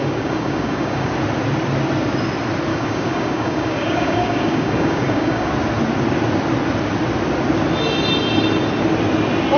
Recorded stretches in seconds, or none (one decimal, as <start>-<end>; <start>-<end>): 1.1-2.7; 5.5-9.6